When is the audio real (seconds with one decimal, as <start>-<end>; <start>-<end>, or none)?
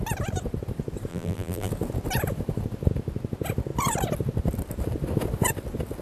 0.0-1.1; 1.7-6.0